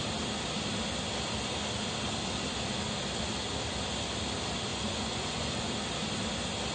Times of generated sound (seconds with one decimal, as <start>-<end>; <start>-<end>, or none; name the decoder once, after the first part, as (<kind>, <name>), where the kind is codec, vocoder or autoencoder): 4.7-5.7 (vocoder, Vocos)